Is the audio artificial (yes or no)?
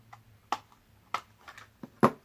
no